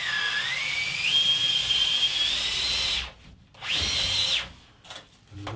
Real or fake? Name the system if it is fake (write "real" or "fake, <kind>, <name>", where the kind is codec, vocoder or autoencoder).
real